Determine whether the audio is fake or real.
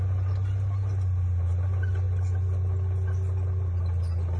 real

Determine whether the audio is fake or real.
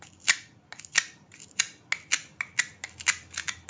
real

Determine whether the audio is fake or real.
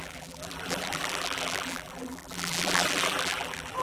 fake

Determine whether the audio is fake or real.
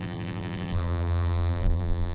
fake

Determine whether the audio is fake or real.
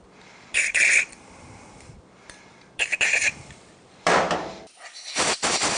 fake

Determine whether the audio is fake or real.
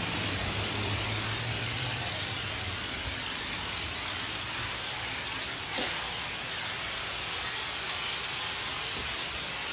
fake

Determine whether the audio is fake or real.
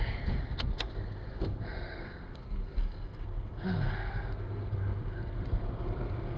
fake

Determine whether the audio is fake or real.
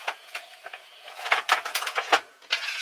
fake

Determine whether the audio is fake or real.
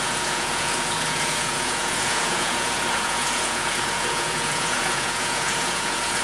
fake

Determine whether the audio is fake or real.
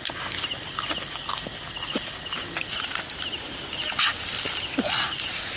real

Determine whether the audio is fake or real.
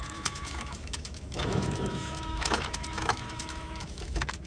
fake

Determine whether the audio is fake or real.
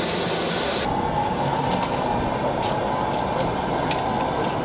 real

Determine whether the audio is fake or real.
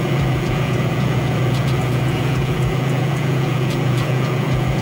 fake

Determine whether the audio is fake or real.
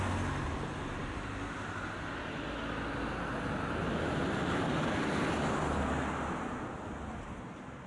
real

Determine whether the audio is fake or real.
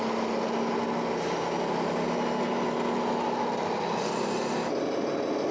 real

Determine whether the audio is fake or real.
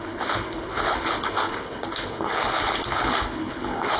fake